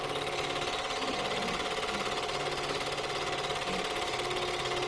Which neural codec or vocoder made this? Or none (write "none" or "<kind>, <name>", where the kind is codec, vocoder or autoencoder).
none